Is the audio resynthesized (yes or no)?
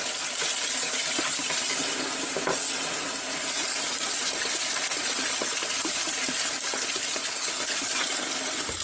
no